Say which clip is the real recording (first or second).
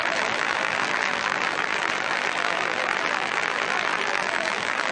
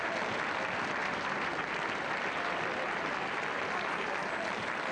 second